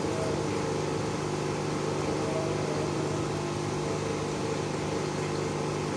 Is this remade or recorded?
recorded